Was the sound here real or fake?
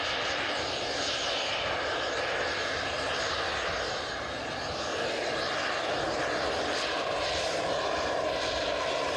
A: real